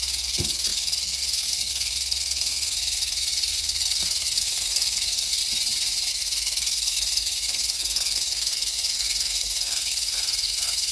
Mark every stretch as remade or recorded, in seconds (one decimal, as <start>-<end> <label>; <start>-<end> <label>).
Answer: 0.0-5.4 remade; 5.4-6.1 recorded; 6.1-10.9 remade